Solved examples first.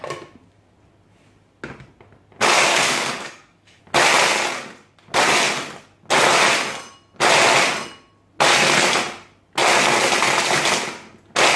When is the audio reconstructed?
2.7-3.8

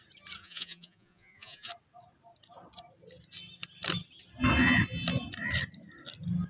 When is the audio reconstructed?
0.4-1.7

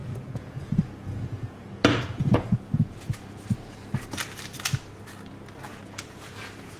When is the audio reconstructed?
0.0-3.9; 5.7-6.8

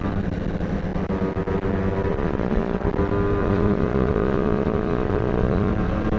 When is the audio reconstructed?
2.1-2.9; 3.4-5.7

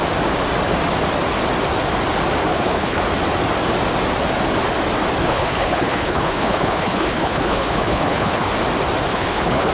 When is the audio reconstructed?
2.5-3.0; 5.2-8.5; 9.1-9.7

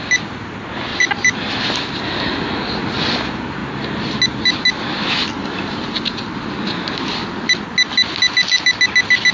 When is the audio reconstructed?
0.9-1.6